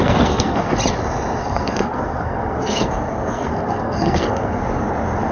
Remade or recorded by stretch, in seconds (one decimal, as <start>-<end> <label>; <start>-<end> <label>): 0.0-0.7 remade; 0.7-1.4 recorded; 1.4-4.6 remade; 4.6-5.3 recorded